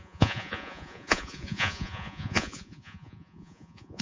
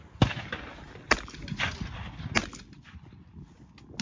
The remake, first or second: first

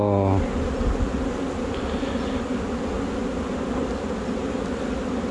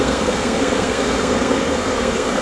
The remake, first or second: second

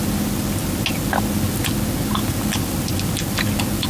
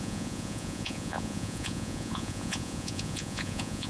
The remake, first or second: second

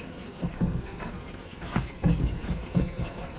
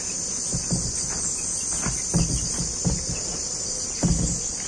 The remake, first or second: first